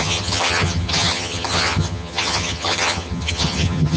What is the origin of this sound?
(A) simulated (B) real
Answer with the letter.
A